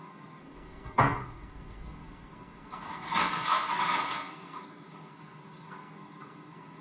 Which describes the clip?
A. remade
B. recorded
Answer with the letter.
A